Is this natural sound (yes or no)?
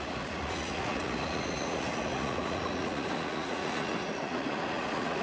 no